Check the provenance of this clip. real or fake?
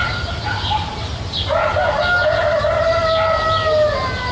real